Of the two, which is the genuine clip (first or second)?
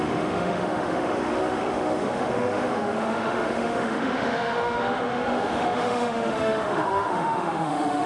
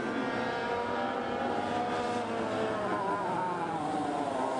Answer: second